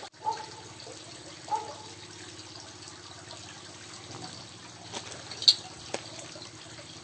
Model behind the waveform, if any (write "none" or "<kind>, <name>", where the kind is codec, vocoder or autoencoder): none